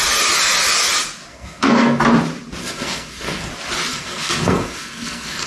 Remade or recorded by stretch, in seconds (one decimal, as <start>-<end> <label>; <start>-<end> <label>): 0.0-1.3 recorded; 1.3-2.0 remade; 2.0-2.6 recorded; 2.6-3.5 remade; 3.5-3.9 recorded; 3.9-5.5 remade